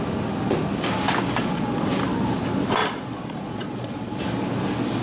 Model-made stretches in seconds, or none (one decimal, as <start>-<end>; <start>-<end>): 1.4-2.0; 2.8-4.2